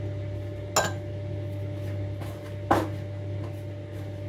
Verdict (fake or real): real